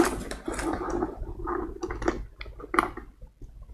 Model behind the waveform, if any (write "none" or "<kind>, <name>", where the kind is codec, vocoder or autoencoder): none